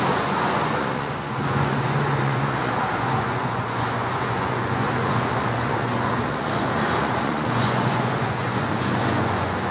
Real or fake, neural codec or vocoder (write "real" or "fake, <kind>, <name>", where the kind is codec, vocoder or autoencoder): fake, vocoder, Vocos